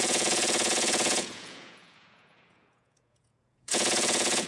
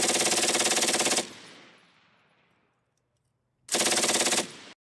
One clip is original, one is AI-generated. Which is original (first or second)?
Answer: second